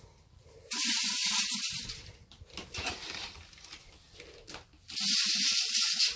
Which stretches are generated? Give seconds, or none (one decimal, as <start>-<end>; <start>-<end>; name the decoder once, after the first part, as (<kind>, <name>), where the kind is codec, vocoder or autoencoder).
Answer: none